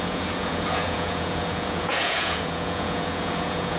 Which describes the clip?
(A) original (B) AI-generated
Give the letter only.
B